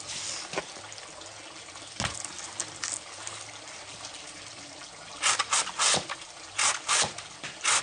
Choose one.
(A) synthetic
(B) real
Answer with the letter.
B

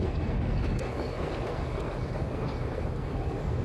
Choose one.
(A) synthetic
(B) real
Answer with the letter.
A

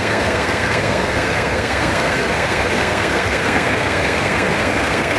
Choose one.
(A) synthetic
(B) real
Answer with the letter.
A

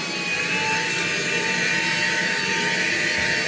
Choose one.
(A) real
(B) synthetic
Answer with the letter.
A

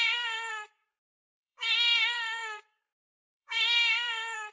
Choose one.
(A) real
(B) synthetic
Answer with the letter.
B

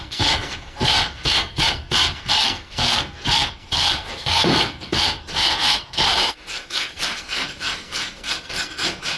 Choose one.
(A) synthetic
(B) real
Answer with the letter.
A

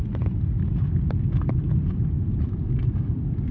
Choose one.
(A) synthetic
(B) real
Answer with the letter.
B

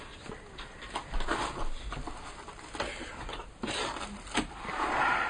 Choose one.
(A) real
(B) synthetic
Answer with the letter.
A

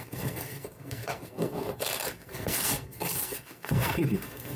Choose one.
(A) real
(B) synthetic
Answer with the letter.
B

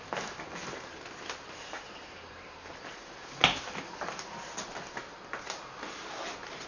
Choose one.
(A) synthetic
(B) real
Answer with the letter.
B